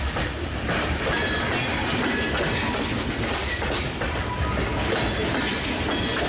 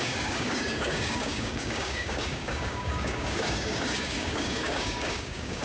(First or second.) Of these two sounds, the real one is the first